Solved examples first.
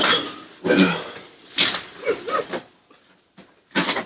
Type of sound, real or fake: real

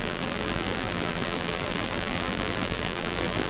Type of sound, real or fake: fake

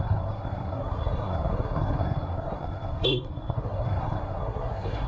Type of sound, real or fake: fake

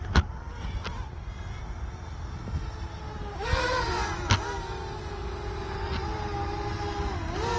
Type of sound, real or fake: real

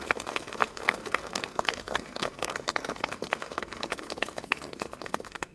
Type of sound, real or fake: fake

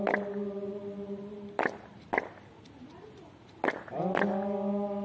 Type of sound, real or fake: real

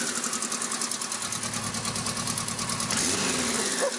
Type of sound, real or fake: real